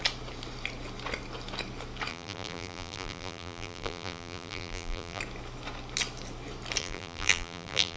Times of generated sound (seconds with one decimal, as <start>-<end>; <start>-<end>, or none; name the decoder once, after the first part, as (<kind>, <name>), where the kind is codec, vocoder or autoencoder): 2.1-5.2 (vocoder, BigVGAN v2); 6.8-8.0